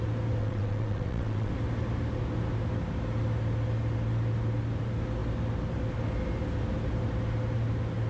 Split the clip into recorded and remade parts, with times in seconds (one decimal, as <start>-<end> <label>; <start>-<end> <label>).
0.0-0.4 recorded; 0.4-1.5 remade; 1.5-8.1 recorded